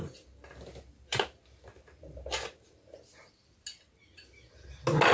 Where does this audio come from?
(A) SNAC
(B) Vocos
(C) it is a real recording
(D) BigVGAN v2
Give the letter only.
C